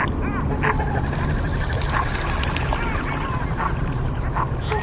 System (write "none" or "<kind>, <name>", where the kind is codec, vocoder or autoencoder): none